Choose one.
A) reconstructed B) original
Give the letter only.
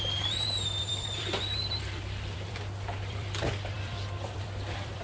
A